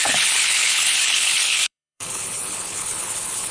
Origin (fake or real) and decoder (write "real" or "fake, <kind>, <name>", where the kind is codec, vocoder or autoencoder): fake, codec, HILCodec